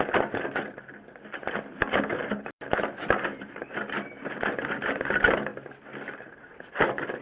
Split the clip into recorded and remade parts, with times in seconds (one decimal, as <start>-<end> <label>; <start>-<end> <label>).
0.0-1.4 recorded; 1.4-4.1 remade; 4.1-7.2 recorded